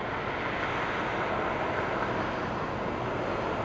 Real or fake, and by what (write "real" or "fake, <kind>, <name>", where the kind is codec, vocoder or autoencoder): real